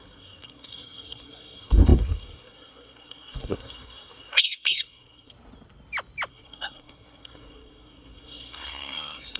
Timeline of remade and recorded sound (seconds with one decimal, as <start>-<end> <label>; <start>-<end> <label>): 0.0-5.3 remade; 5.3-6.3 recorded; 6.3-9.4 remade